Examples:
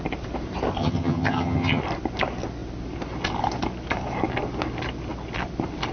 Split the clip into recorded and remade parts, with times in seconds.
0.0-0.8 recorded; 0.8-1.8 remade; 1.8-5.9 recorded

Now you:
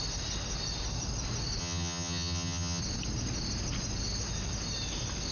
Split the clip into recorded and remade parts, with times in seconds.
0.0-1.6 recorded; 1.6-2.8 remade; 2.8-5.3 recorded